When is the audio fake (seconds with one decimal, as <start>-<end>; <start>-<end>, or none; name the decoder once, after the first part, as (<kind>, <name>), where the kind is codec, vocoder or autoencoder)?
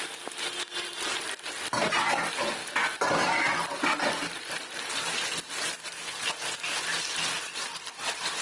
none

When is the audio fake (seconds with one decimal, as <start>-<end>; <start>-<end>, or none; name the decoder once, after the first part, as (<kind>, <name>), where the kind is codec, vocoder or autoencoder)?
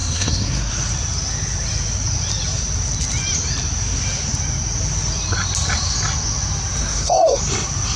0.0-0.7 (codec, SNAC); 6.8-7.4